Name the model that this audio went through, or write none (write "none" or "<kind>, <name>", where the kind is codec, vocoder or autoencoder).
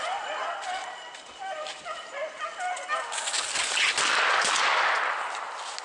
none